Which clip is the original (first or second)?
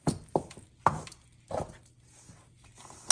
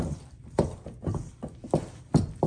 first